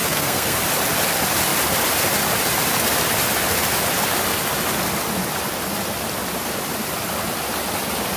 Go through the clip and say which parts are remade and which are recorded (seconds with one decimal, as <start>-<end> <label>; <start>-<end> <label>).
0.0-0.6 remade; 0.6-8.2 recorded